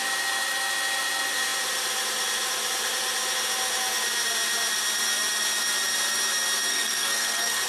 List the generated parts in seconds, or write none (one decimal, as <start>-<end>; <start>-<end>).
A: 6.7-7.7

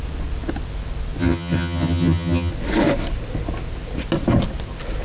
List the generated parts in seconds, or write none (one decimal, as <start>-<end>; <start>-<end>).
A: 1.2-2.5

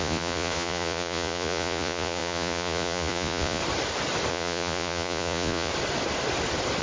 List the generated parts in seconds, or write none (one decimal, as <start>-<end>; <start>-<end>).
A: 0.0-3.6; 4.3-5.7

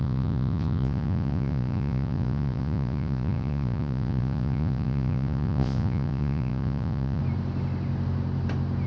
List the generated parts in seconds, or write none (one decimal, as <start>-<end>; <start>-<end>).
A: 0.0-7.2

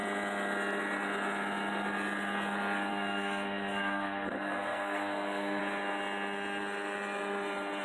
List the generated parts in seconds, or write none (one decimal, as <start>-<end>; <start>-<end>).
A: 2.9-5.6

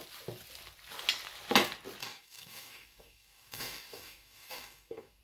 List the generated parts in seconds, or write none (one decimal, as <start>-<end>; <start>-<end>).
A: 2.0-5.2

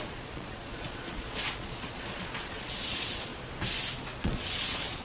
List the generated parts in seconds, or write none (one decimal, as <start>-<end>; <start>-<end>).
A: 0.0-3.3; 4.2-5.0